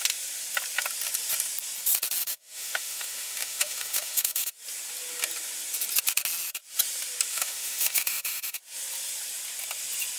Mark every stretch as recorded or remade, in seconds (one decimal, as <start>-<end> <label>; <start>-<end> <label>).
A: 0.0-2.2 recorded; 2.2-4.5 remade; 4.5-7.3 recorded; 7.3-8.6 remade; 8.6-10.2 recorded